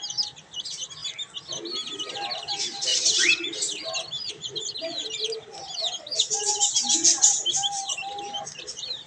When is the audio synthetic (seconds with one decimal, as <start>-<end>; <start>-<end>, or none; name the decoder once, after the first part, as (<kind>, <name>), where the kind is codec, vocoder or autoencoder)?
none